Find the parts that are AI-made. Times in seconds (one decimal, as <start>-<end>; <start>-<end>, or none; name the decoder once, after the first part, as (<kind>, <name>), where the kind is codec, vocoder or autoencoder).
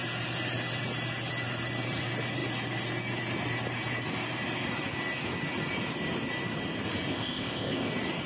7.1-7.9 (codec, ZipCodec)